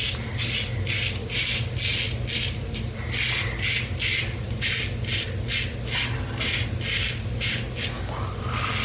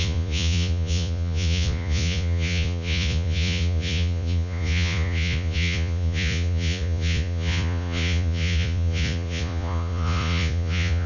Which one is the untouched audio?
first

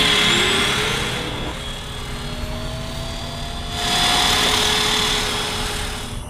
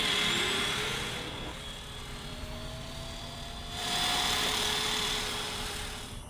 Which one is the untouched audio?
first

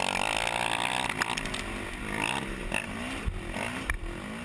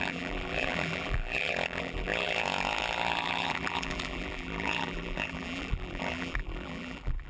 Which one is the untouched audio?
first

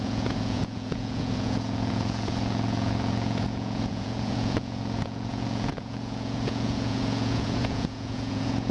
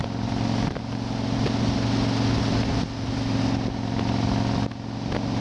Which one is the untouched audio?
second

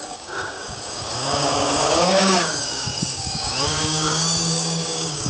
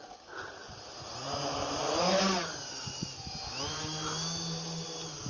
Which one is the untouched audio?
second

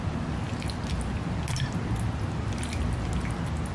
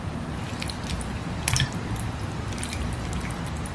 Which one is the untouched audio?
first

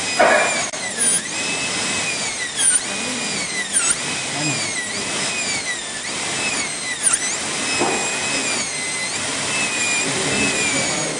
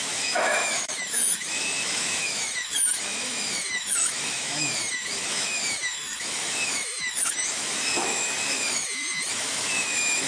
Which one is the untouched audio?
first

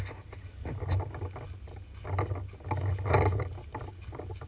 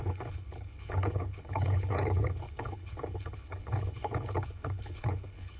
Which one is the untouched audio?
first